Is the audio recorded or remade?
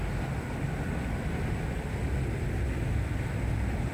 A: recorded